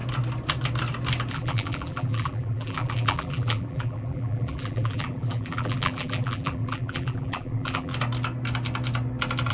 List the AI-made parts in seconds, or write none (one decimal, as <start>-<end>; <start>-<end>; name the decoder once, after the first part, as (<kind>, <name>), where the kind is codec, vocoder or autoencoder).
1.3-7.9 (vocoder, BigVGAN v2)